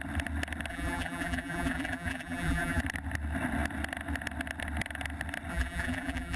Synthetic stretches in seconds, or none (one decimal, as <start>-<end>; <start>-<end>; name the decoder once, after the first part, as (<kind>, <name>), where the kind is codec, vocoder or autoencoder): 0.7-2.8 (vocoder, BigVGAN v2); 5.5-6.4